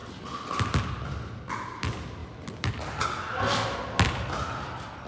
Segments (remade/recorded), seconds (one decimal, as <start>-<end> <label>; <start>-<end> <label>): 0.0-5.1 recorded